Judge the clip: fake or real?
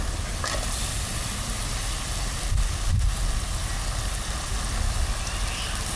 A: real